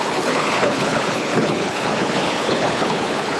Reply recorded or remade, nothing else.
remade